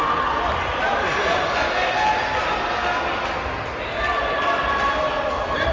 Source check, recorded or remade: recorded